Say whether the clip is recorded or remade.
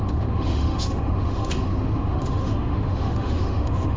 remade